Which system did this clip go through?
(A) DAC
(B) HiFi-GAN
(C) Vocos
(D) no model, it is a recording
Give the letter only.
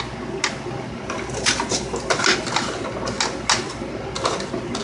D